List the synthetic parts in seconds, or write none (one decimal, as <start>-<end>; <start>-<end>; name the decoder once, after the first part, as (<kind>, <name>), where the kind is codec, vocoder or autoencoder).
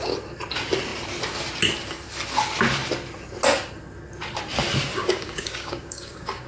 4.9-6.5 (codec, DAC)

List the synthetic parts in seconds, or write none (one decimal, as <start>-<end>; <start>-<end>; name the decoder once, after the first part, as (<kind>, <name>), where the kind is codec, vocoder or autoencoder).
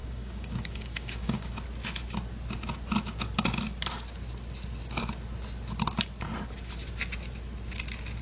0.0-1.5 (codec, DAC)